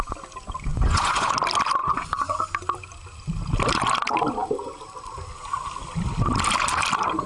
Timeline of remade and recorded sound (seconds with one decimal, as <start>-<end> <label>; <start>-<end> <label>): 0.0-0.7 recorded; 0.7-1.3 remade; 1.3-1.8 recorded; 1.8-2.6 remade; 2.6-7.3 recorded